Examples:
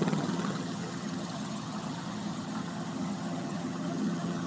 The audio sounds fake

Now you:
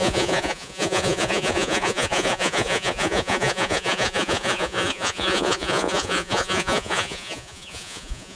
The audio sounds fake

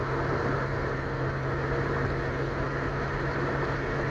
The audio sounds real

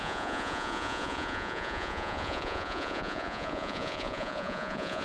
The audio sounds fake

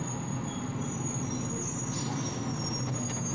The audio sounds real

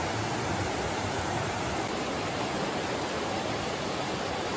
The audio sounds real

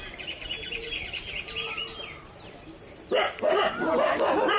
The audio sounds real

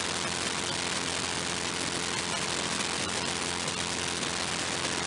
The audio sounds real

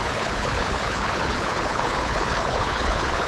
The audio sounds fake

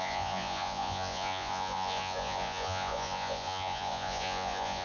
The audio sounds fake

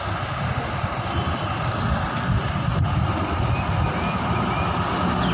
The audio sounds real